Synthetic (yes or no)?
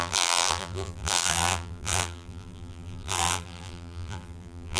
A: yes